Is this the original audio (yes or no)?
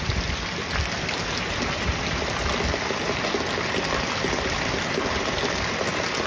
yes